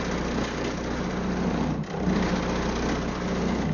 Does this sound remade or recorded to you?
recorded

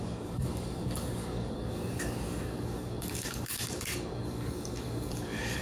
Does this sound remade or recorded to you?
remade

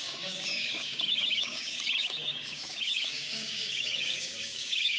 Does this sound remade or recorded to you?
remade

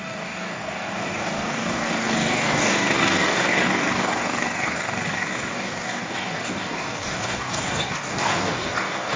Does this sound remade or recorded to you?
remade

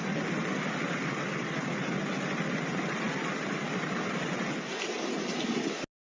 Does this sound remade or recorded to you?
recorded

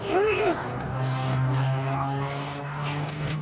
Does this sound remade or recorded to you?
remade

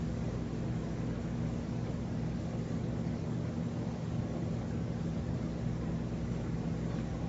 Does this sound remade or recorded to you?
remade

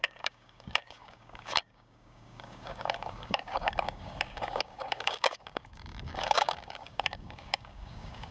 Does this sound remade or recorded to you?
remade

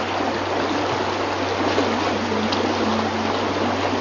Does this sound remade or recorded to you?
recorded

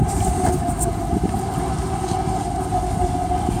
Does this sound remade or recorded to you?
recorded